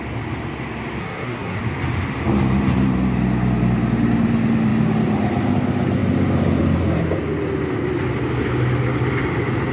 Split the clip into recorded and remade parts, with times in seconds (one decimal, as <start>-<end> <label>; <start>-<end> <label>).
0.0-1.0 recorded; 1.0-1.6 remade; 1.6-9.7 recorded

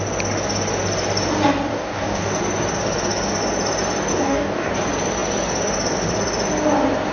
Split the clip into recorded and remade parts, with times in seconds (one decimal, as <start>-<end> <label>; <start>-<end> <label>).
0.0-1.7 recorded; 1.7-2.4 remade; 2.4-4.1 recorded; 4.1-4.7 remade; 4.7-7.1 recorded

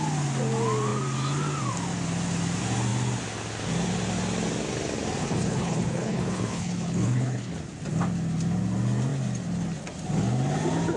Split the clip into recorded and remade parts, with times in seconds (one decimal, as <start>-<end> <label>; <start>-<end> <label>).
0.0-5.2 recorded; 5.2-7.5 remade; 7.5-11.0 recorded

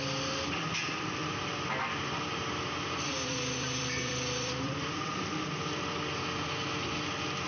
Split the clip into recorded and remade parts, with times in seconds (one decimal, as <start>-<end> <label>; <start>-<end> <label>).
0.0-0.8 recorded; 0.8-5.3 remade; 5.3-7.5 recorded

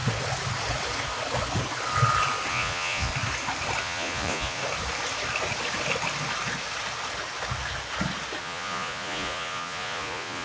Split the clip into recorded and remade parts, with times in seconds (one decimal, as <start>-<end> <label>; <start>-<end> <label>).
0.0-2.5 recorded; 2.5-3.1 remade; 3.1-3.8 recorded; 3.8-4.6 remade; 4.6-8.4 recorded; 8.4-10.4 remade

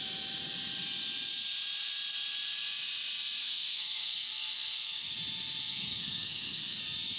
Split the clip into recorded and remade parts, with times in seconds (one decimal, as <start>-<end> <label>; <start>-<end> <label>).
0.0-3.4 recorded; 3.4-5.1 remade; 5.1-5.6 recorded; 5.6-6.8 remade; 6.8-7.2 recorded